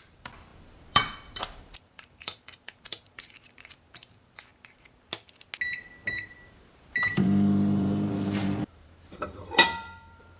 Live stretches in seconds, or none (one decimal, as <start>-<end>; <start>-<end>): 4.5-6.1